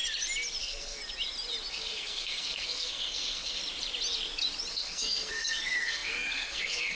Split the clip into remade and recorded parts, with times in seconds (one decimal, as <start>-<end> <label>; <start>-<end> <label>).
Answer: 0.0-0.6 recorded; 0.6-1.0 remade; 1.0-1.7 recorded; 1.7-3.6 remade; 3.6-4.7 recorded; 4.7-6.9 remade